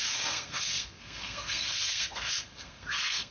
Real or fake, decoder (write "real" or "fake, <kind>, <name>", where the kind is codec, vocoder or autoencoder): fake, codec, SNAC